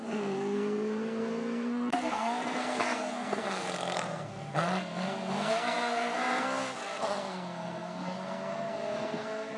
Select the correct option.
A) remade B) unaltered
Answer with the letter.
A